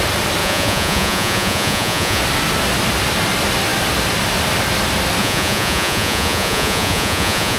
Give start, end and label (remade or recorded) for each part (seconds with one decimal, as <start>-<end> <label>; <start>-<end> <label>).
0.0-0.4 recorded; 0.4-2.2 remade; 2.2-5.2 recorded; 5.2-7.6 remade